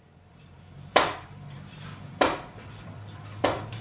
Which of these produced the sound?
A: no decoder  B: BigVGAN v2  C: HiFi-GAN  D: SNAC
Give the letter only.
B